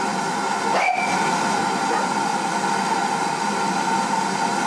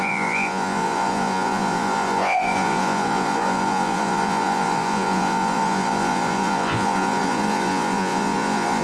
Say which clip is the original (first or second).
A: first